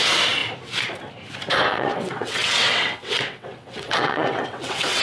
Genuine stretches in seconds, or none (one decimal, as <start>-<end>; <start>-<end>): 0.0-1.7